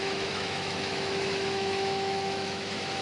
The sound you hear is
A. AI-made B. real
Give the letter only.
A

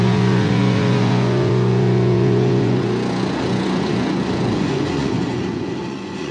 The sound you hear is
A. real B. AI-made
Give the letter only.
B